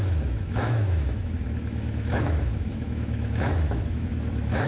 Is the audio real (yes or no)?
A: no